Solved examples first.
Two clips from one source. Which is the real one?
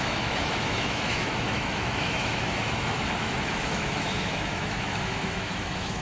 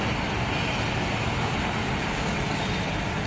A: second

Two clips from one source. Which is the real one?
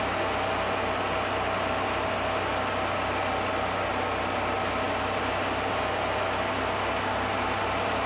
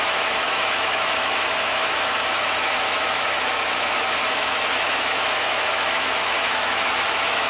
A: first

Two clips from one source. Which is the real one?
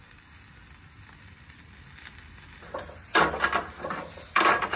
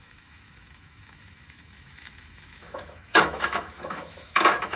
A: first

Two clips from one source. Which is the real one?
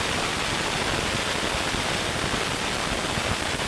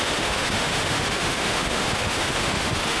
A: first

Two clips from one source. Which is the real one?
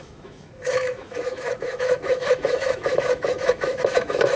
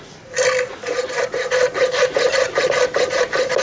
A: second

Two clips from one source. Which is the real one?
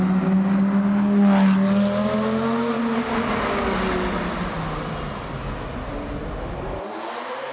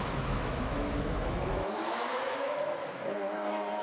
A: first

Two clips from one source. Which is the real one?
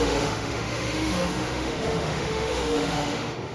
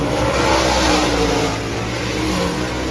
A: second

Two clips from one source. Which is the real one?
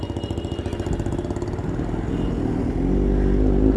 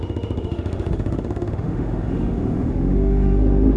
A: first